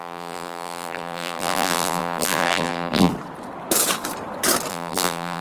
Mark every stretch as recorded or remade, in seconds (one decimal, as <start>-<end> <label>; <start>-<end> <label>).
0.0-3.1 remade; 3.1-4.7 recorded; 4.7-5.4 remade